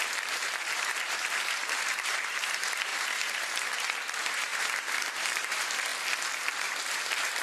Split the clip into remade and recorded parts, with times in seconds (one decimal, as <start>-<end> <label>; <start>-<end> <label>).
0.0-4.5 remade; 4.5-5.1 recorded; 5.1-5.9 remade; 5.9-6.8 recorded; 6.8-7.4 remade